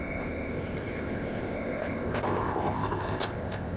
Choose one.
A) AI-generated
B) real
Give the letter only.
A